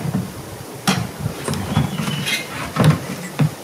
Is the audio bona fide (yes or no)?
yes